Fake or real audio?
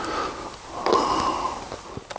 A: real